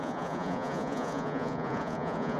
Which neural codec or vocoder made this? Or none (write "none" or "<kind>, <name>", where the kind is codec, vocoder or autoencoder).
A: vocoder, Vocos